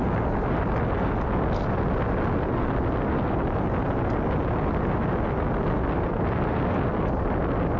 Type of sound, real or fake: real